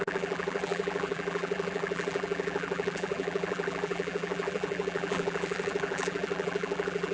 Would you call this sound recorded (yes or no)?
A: no